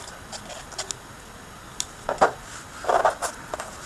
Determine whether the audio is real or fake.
real